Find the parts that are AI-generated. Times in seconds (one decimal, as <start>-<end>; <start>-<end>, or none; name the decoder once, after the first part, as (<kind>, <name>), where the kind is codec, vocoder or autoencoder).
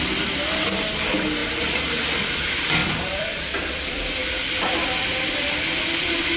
2.8-5.8 (vocoder, BigVGAN v2)